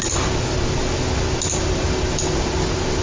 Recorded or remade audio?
recorded